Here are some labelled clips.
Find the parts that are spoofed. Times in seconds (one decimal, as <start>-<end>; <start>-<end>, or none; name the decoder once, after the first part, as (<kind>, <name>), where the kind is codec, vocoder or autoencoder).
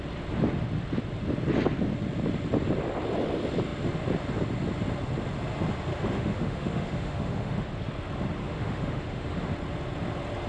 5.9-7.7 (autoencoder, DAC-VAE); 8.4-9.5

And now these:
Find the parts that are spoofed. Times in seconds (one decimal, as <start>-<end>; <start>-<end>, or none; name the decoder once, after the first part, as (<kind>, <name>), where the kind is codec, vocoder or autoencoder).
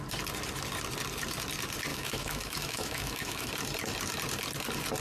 1.9-3.5 (autoencoder, DAC-VAE)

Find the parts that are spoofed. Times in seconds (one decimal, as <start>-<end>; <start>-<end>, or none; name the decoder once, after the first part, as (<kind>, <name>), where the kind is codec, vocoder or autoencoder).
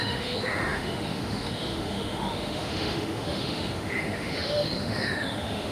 0.0-5.7 (autoencoder, DAC-VAE)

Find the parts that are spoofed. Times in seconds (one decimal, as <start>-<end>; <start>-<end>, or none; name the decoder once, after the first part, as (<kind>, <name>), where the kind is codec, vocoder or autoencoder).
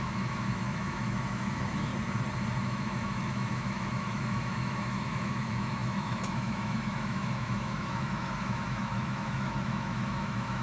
0.0-1.9 (autoencoder, DAC-VAE); 2.6-10.6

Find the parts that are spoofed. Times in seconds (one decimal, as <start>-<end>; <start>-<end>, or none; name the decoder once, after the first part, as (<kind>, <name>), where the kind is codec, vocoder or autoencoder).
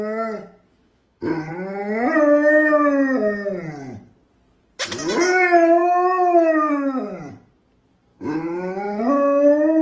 0.8-1.5 (autoencoder, DAC-VAE); 5.8-7.3; 8.1-9.0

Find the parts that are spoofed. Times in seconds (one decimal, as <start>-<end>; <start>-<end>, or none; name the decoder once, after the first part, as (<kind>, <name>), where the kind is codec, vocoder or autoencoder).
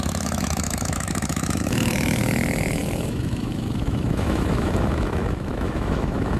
0.0-6.4 (autoencoder, DAC-VAE)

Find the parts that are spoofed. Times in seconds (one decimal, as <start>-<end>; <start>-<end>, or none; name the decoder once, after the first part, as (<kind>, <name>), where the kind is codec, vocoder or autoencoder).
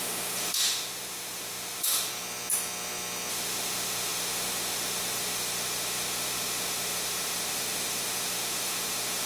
0.0-2.1 (autoencoder, DAC-VAE); 3.3-9.3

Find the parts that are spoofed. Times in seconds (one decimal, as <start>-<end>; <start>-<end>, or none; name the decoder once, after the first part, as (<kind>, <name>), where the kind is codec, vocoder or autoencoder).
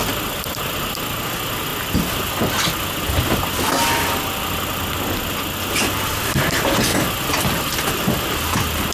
none